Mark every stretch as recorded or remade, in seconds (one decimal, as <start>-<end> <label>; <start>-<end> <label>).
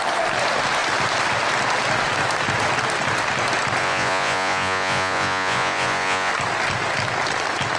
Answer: 0.0-3.8 recorded; 3.8-6.3 remade; 6.3-7.8 recorded